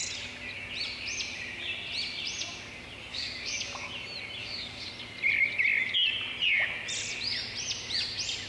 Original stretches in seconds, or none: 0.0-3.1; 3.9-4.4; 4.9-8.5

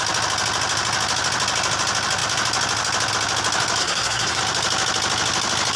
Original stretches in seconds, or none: 0.0-3.8; 4.4-5.8

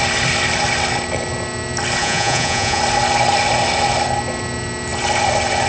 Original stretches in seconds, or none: 0.0-2.0; 2.8-5.7

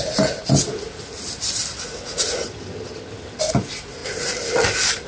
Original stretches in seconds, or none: 0.0-2.4; 3.4-5.1

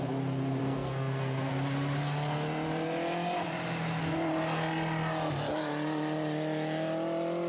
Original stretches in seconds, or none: 0.0-0.6; 1.5-7.5

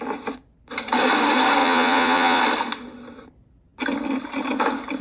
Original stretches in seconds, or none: 0.0-1.6; 2.4-5.0

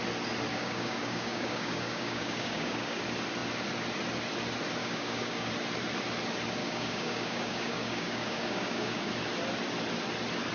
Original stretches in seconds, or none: 0.0-0.5; 3.0-4.8; 5.5-6.6; 9.1-10.5

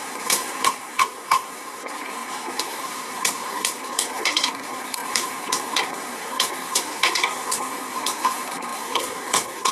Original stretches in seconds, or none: none